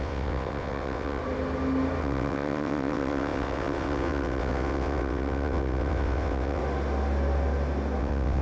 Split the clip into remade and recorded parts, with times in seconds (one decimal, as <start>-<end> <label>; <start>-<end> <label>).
0.0-1.2 remade; 1.2-2.0 recorded; 2.0-6.6 remade; 6.6-8.0 recorded; 8.0-8.4 remade